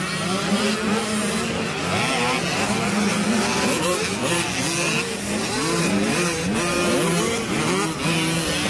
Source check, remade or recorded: recorded